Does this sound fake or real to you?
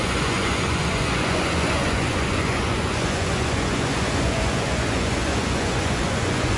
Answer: fake